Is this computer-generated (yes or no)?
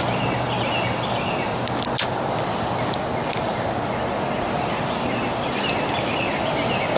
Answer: no